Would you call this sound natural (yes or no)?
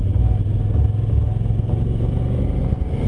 yes